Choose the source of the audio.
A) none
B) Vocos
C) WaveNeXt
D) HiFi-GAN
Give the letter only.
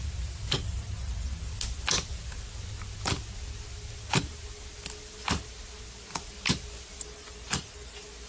A